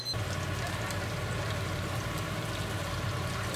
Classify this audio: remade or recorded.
recorded